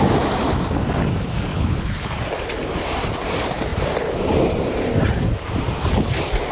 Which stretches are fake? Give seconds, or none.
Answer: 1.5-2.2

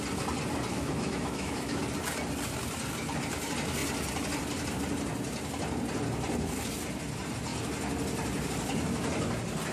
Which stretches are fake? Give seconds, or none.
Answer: 0.7-1.8

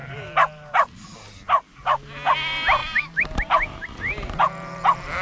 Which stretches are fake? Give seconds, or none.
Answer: 0.0-0.7; 2.8-4.4